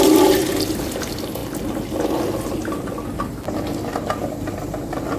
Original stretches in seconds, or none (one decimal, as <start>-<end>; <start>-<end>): 0.0-5.2